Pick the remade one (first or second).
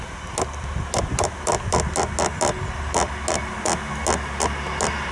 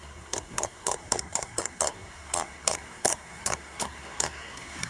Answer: second